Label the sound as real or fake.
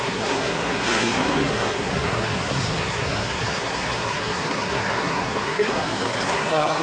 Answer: fake